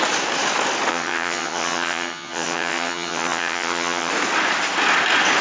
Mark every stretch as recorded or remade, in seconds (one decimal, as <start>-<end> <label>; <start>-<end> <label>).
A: 0.0-0.9 recorded; 0.9-4.1 remade; 4.1-5.4 recorded